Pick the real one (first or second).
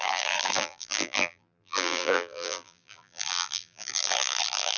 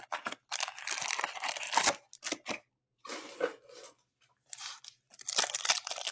second